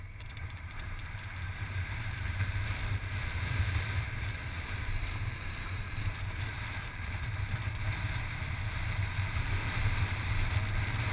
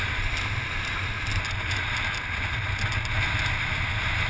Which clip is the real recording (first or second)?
second